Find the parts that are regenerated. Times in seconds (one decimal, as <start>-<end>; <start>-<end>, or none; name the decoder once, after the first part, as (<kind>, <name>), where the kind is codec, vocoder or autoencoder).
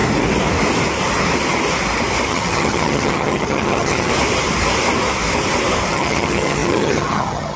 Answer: 2.3-4.1 (vocoder, HiFi-GAN); 5.9-7.6